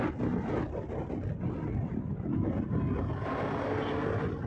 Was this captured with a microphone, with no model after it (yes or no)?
yes